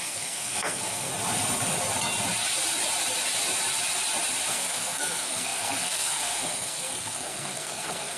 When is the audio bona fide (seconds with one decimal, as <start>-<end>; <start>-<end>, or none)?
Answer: 1.1-4.5

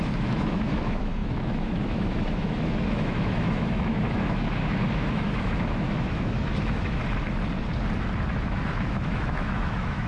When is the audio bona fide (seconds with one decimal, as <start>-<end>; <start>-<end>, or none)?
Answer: 7.0-8.3

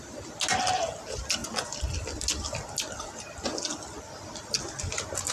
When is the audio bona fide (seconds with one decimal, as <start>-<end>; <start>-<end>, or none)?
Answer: 0.0-5.3

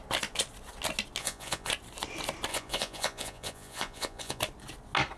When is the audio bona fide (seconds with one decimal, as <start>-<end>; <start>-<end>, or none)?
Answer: 0.0-1.2; 1.7-2.5; 4.4-5.2

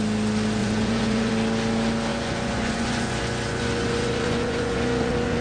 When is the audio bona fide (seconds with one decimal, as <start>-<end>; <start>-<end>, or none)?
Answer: 0.0-0.6; 1.3-2.1